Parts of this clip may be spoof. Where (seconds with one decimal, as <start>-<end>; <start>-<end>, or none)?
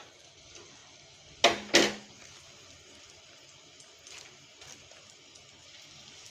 none